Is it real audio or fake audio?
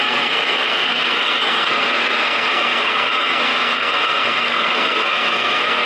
fake